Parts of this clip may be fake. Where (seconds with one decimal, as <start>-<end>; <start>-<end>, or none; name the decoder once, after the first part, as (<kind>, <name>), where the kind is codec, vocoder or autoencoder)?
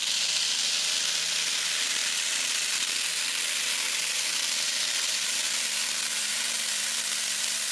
none